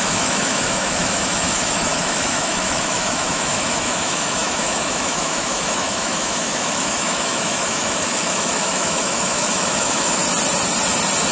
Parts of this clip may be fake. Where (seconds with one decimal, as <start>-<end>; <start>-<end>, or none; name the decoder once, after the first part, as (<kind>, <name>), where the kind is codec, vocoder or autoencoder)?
0.0-10.2 (autoencoder, DAC-VAE)